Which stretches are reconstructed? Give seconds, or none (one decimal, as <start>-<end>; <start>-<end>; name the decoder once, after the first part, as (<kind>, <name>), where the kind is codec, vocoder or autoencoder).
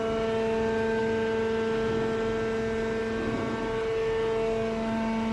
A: none